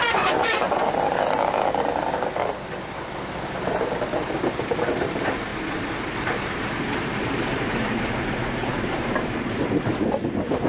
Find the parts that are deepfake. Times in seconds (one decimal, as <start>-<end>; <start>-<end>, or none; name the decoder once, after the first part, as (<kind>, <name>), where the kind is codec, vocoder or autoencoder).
0.0-5.5 (vocoder, BigVGAN v2); 6.2-10.7